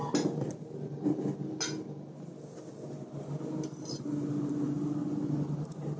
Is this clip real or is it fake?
real